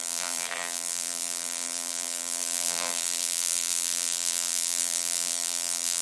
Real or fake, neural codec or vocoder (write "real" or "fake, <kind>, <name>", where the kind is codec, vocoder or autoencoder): fake, vocoder, BigVGAN v2